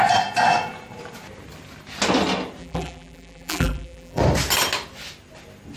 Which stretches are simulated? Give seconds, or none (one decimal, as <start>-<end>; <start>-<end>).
2.6-4.2